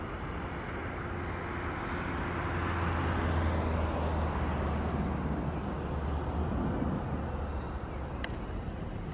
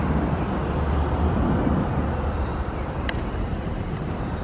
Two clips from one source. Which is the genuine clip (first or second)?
first